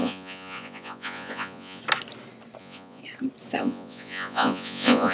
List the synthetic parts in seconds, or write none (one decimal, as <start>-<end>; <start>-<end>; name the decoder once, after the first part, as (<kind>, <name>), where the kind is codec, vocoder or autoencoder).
0.0-1.8 (vocoder, Vocos); 2.6-3.0; 3.6-5.1